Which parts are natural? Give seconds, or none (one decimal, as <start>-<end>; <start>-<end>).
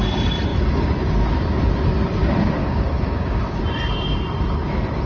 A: 0.0-2.6; 3.6-5.1